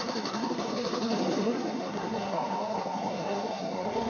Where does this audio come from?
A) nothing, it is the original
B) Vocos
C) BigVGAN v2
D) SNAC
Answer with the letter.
D